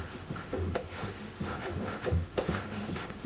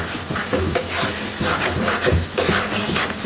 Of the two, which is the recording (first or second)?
second